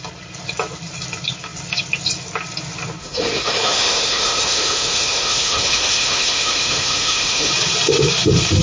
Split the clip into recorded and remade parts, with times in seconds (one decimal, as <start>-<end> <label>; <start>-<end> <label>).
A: 0.0-3.0 recorded; 3.0-7.5 remade; 7.5-8.6 recorded